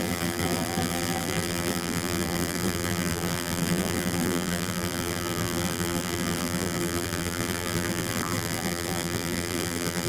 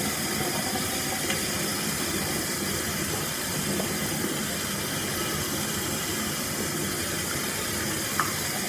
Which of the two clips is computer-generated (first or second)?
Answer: first